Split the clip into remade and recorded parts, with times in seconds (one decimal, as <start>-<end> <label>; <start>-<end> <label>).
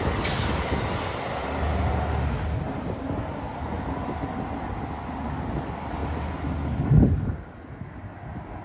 0.0-8.6 recorded